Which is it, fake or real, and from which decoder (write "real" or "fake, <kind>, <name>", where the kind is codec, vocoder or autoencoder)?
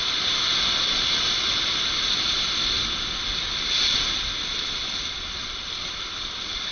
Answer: real